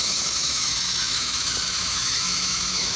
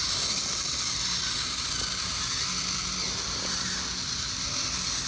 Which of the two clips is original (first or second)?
second